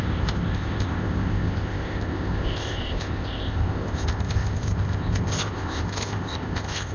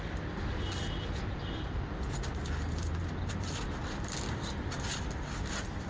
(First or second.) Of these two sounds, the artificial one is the first